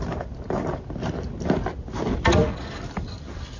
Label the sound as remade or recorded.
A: recorded